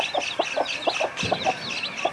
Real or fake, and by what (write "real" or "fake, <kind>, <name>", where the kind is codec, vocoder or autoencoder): real